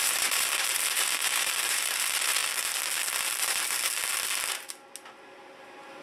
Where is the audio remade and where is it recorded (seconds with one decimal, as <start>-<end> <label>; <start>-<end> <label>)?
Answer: 0.0-2.4 remade; 2.4-5.2 recorded; 5.2-6.0 remade